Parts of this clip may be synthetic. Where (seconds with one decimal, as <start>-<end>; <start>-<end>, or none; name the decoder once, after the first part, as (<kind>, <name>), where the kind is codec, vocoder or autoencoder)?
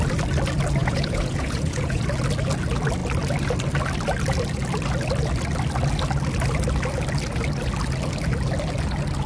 0.8-2.0 (vocoder, Vocos)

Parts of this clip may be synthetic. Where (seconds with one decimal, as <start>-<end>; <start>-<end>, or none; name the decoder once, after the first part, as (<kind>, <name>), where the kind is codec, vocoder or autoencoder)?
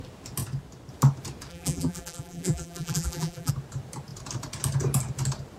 1.5-3.5 (vocoder, BigVGAN v2)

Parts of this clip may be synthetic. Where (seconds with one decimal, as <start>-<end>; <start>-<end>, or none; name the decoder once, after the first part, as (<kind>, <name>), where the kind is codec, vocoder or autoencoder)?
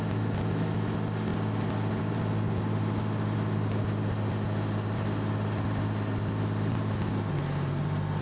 none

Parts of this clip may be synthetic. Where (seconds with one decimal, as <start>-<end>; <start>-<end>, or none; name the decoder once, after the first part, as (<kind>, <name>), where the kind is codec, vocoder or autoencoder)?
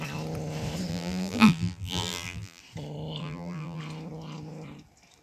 0.9-2.6 (vocoder, BigVGAN v2); 3.2-3.8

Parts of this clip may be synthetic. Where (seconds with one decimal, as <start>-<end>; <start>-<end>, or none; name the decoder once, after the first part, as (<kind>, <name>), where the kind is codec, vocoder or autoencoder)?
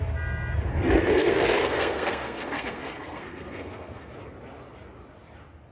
0.7-4.1 (codec, SNAC)